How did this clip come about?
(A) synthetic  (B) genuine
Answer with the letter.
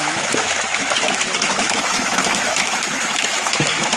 A